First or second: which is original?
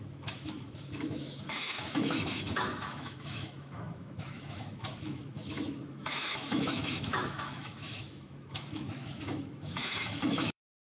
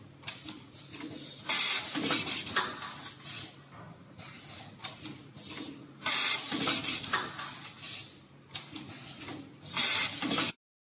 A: second